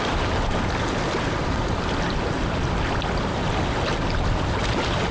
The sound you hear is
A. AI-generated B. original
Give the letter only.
B